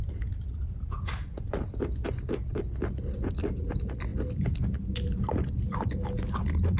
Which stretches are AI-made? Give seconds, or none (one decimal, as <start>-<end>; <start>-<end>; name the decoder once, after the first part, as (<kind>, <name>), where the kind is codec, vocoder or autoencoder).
4.1-4.6 (vocoder, BigVGAN v2)